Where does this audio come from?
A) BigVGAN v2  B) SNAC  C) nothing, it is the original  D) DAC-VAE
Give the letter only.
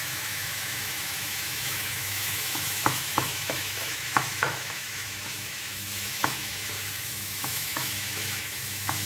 D